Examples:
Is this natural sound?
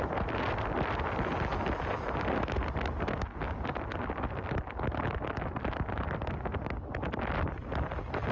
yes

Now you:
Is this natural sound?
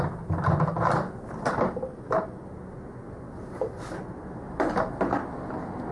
yes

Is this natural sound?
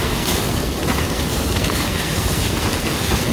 no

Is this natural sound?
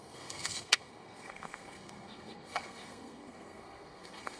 no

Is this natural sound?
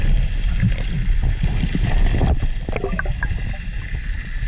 yes